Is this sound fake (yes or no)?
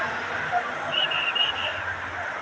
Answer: no